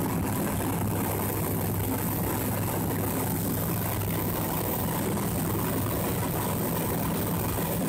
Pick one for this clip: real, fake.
real